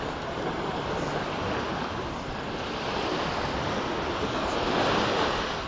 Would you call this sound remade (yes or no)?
no